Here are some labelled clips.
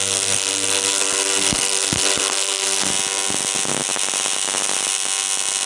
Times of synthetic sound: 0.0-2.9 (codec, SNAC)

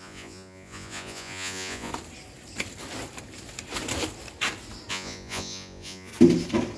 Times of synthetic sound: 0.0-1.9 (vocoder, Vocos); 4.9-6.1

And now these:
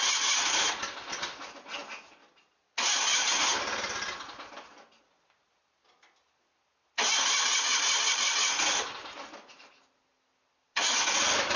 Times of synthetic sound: none

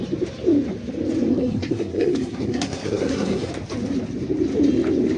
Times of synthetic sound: 1.3-3.5 (codec, SNAC)

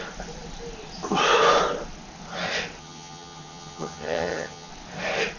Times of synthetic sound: 2.8-4.7 (vocoder, HiFi-GAN)

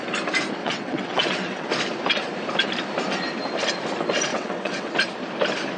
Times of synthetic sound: 0.6-1.7 (vocoder, WaveNeXt); 4.3-4.9

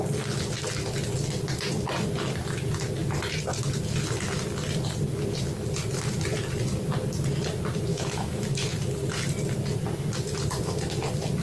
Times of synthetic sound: 7.9-8.7 (autoencoder, DAC-VAE)